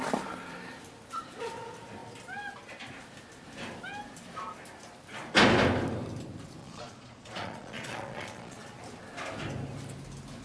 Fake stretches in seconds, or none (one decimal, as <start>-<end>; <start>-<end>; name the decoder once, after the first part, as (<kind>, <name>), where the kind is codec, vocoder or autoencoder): 6.6-8.8 (vocoder, Vocos)